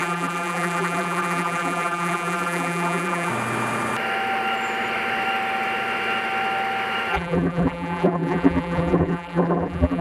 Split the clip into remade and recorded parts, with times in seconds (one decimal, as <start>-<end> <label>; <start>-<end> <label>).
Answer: 0.0-3.3 remade; 3.3-7.1 recorded; 7.1-10.0 remade